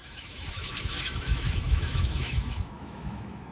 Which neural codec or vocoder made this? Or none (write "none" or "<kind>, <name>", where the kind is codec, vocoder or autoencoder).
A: autoencoder, DAC-VAE